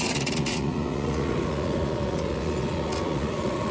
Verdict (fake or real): fake